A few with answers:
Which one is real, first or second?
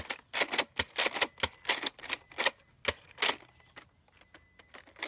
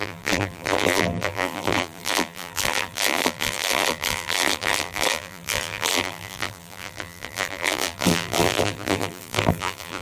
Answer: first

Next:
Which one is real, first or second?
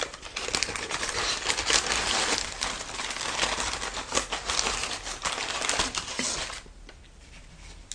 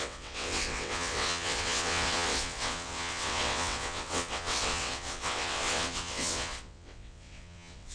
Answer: first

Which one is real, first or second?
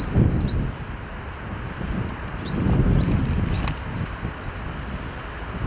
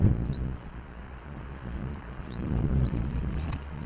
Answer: first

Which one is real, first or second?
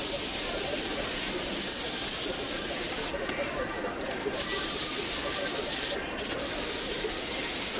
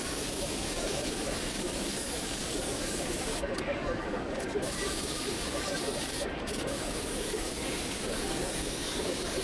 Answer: first